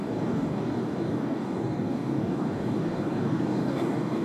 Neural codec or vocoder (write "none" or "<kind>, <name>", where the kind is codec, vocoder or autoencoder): codec, DAC